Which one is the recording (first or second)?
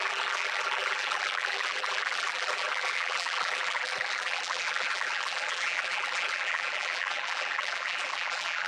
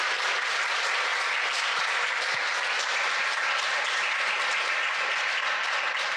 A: second